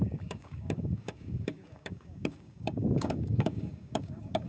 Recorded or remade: remade